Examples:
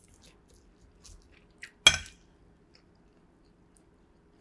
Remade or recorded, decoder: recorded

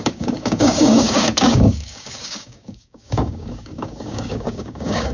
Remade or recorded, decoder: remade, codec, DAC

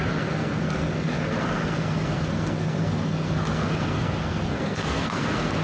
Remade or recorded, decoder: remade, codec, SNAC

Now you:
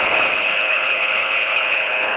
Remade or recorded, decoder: remade, codec, HILCodec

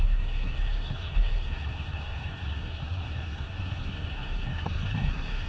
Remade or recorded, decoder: remade, codec, SNAC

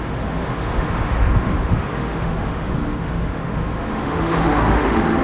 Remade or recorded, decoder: remade, autoencoder, DAC-VAE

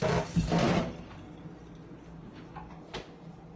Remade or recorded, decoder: recorded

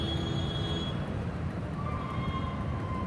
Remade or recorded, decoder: recorded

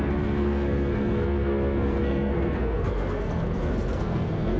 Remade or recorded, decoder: remade, codec, SNAC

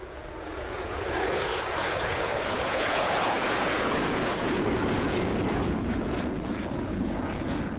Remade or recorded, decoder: remade, vocoder, Vocos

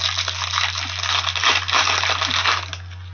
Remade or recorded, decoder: recorded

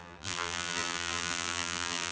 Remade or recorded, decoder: remade, vocoder, BigVGAN v2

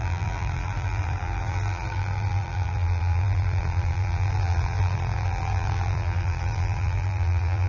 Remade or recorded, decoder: remade, vocoder, BigVGAN v2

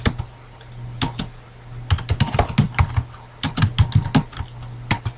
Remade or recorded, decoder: recorded